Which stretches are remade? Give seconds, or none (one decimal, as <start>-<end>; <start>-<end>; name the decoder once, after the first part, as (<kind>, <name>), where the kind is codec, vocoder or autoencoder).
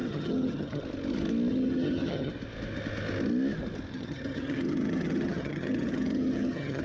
0.0-0.8 (vocoder, HiFi-GAN); 1.5-2.3; 3.9-6.8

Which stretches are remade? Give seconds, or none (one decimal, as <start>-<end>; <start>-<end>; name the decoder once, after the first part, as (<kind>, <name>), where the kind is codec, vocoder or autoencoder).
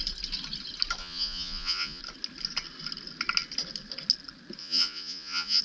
1.0-2.0 (vocoder, Vocos); 4.6-5.6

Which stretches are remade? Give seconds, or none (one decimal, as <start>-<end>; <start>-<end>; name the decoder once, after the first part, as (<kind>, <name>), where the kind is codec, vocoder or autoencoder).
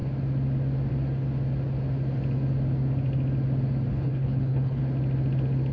3.9-4.8 (codec, HILCodec)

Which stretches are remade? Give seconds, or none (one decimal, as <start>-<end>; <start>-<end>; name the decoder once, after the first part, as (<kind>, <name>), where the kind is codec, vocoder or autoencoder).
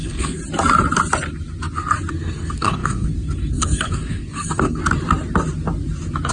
0.0-0.4 (codec, SNAC); 2.1-4.8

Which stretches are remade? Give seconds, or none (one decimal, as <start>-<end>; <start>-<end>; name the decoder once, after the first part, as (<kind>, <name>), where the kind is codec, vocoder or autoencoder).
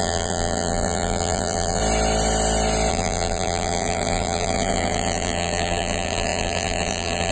0.0-1.8 (vocoder, BigVGAN v2); 2.9-7.3